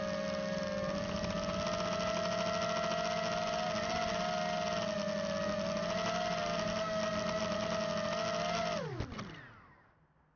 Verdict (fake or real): real